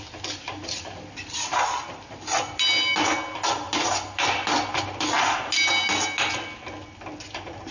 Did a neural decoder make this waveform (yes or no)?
no